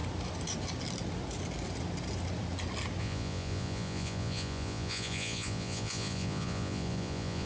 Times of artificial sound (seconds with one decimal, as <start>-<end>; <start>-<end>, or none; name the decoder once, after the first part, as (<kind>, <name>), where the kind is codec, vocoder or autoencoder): 3.0-7.5 (vocoder, Vocos)